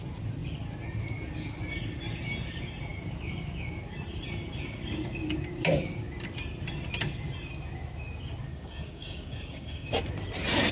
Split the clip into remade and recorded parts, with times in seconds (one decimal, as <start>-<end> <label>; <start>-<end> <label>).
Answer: 0.0-8.5 recorded; 8.5-9.9 remade; 9.9-10.7 recorded

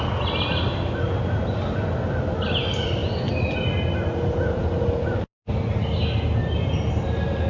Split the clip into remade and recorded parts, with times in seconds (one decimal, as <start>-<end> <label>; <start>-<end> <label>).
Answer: 0.0-7.5 recorded

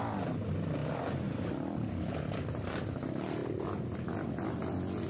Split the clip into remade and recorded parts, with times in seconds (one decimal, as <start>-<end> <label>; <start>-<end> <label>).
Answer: 0.0-5.1 recorded

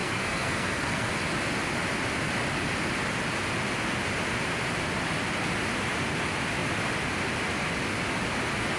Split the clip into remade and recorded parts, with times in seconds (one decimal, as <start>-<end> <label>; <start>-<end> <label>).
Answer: 0.0-1.1 remade; 1.1-8.8 recorded

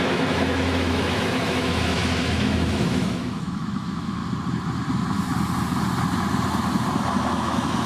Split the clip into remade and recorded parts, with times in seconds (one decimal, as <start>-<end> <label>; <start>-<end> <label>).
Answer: 0.0-4.2 remade; 4.2-7.2 recorded; 7.2-7.9 remade